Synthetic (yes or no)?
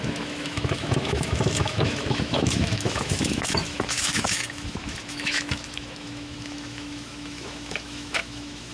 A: yes